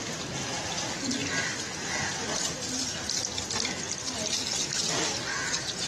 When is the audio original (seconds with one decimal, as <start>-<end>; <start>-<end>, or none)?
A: 0.0-5.3